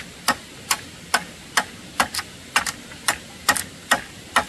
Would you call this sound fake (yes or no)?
no